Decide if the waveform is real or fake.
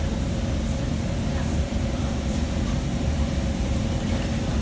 fake